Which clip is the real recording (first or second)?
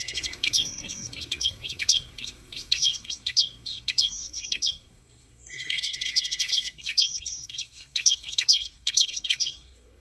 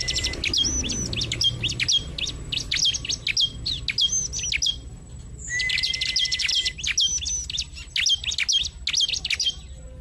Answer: second